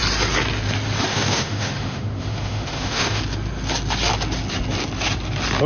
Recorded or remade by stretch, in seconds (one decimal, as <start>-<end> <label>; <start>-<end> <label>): 0.0-1.1 recorded; 1.1-3.2 remade; 3.2-5.7 recorded